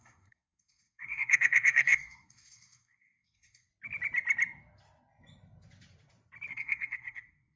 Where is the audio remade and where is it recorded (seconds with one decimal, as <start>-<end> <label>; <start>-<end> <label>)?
0.0-3.7 remade; 3.7-6.5 recorded; 6.5-7.6 remade